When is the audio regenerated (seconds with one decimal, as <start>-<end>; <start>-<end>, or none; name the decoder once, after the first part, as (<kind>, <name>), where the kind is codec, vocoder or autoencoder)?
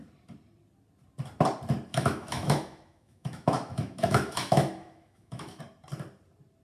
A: 1.9-5.6 (autoencoder, DAC-VAE)